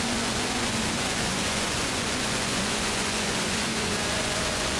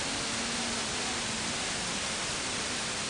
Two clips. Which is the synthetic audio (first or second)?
first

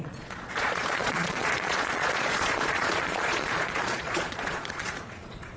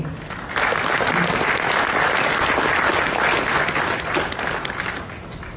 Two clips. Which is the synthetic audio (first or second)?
first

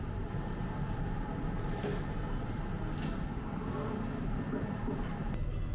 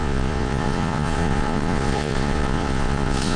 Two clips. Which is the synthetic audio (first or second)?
second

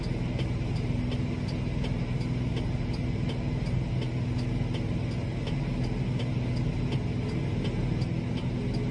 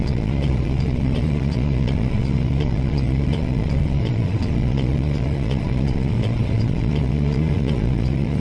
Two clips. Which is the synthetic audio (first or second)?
second